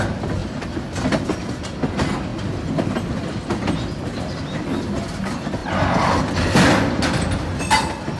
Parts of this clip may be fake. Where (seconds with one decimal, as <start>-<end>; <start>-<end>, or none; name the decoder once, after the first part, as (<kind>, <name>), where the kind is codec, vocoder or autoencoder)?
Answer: none